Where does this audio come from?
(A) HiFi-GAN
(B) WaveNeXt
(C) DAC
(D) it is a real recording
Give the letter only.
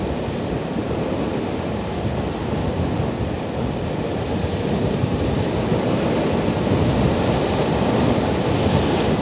D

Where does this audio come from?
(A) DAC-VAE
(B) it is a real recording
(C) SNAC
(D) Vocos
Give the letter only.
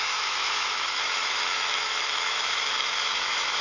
A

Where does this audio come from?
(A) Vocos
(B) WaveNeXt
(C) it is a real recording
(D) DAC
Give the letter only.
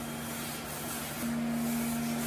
C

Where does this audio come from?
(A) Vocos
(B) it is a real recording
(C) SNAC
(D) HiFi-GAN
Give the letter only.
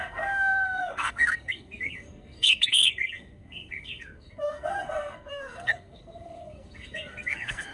C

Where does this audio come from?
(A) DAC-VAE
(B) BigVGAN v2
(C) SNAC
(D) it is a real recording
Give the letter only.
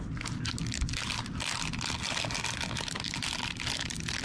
D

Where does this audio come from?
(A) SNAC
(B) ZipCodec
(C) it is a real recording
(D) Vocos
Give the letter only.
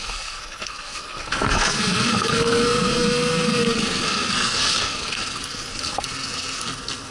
A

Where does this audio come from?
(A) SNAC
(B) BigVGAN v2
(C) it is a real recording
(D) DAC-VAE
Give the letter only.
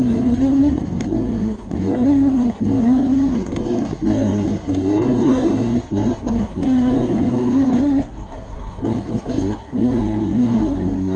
A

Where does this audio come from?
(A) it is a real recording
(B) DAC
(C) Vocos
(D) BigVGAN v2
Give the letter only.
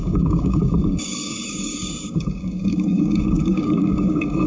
B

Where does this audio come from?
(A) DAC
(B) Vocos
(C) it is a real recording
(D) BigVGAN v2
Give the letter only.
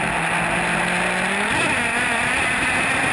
C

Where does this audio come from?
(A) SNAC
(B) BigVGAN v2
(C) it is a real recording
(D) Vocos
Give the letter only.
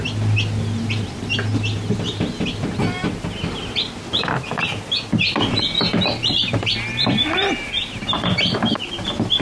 C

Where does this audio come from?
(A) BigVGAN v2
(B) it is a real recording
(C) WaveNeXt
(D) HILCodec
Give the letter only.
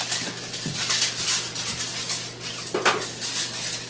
B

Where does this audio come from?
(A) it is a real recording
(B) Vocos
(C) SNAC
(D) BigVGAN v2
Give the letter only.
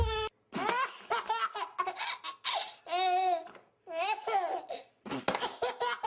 A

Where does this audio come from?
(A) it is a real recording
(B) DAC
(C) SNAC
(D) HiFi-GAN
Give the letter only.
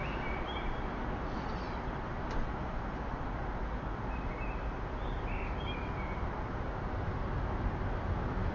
A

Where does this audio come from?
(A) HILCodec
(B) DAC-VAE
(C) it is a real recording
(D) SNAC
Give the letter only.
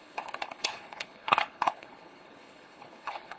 A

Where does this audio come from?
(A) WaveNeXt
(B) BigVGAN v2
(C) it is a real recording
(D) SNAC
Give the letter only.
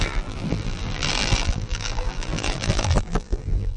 B